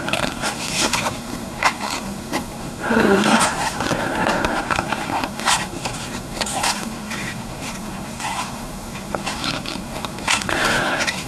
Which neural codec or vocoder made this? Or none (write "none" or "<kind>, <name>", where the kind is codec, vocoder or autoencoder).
codec, SNAC